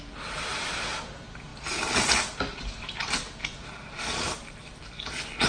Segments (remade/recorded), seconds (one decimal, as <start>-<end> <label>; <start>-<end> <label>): 0.0-5.5 recorded